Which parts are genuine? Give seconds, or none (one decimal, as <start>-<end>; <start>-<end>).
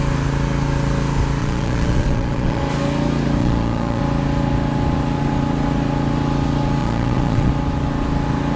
0.0-1.4; 2.6-3.4; 4.0-6.8; 7.5-8.6